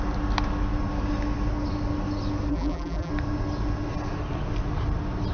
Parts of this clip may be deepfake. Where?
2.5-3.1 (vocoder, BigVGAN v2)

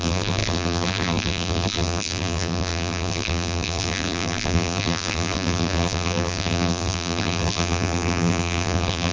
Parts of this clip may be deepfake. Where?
0.0-9.1 (vocoder, BigVGAN v2)